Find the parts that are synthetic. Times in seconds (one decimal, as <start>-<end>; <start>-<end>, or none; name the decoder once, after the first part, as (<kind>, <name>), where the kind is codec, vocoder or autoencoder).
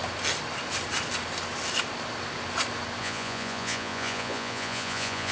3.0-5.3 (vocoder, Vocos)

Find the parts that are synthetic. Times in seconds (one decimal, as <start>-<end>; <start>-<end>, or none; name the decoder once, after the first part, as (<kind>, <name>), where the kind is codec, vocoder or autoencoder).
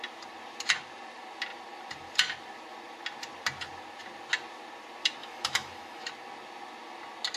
5.2-6.1 (autoencoder, DAC-VAE)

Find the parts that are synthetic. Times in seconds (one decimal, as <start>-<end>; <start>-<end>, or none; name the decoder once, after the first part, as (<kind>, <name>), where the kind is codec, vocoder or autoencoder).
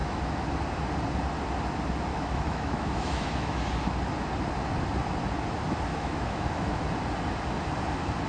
0.0-0.5 (autoencoder, DAC-VAE); 2.1-3.7; 5.9-6.8